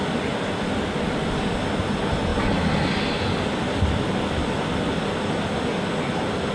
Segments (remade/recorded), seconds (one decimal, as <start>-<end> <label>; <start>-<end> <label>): 0.0-6.5 recorded

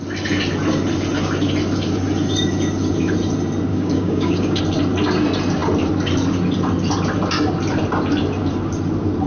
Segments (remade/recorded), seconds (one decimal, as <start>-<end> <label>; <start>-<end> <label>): 0.0-3.7 recorded; 3.7-4.6 remade; 4.6-9.3 recorded

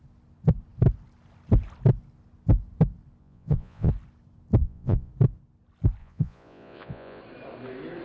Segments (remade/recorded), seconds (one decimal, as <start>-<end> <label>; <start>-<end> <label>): 0.0-3.2 recorded; 3.2-3.9 remade; 3.9-4.6 recorded; 4.6-5.1 remade; 5.1-6.0 recorded; 6.0-7.2 remade; 7.2-8.0 recorded

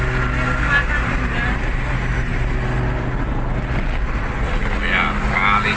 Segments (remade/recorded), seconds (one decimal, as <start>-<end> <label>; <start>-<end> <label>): 0.0-5.8 recorded